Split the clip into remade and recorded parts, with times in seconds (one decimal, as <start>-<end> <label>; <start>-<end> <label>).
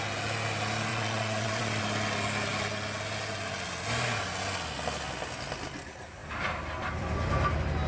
0.0-0.9 recorded; 0.9-1.8 remade; 1.8-7.9 recorded